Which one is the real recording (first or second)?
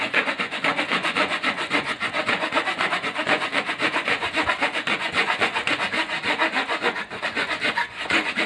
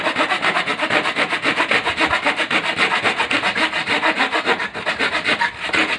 second